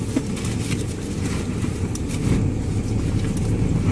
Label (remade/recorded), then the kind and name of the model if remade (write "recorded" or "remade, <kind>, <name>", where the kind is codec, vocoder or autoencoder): recorded